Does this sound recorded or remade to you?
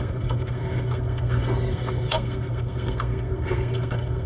remade